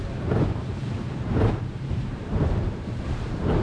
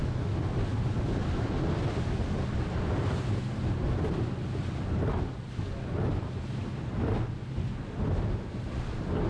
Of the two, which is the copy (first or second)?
first